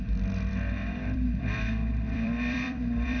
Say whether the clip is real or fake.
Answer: fake